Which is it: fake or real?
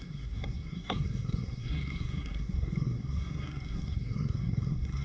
fake